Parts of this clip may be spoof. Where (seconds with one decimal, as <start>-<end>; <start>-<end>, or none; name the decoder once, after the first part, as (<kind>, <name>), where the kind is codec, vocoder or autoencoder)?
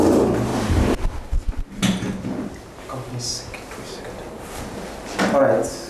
none